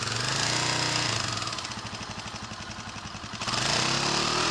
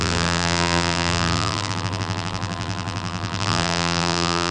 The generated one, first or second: second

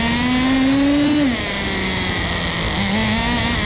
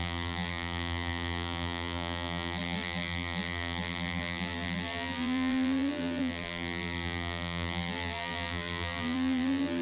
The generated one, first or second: second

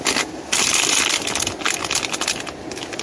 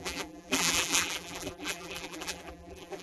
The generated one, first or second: second